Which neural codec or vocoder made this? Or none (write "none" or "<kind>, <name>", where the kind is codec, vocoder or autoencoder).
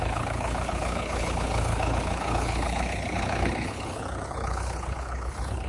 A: codec, HILCodec